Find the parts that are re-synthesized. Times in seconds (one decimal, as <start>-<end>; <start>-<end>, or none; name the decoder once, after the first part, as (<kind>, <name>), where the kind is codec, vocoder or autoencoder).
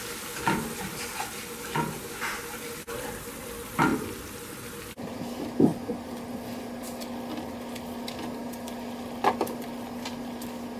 none